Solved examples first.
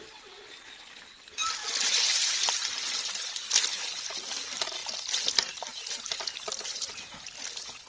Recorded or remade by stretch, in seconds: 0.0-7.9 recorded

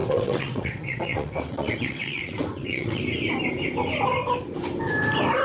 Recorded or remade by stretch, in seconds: 0.0-3.0 remade; 3.0-5.4 recorded

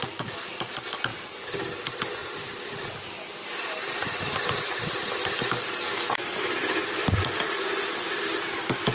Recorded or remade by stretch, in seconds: 0.0-8.9 recorded

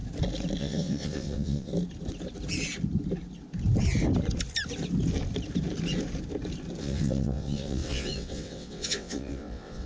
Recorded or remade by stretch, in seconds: 0.0-0.6 recorded; 0.6-1.7 remade; 1.7-6.8 recorded; 6.8-9.9 remade

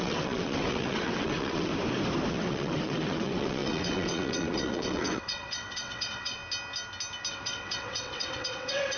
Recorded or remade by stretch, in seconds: 0.0-1.7 remade; 1.7-2.3 recorded; 2.3-6.4 remade; 6.4-7.3 recorded; 7.3-9.0 remade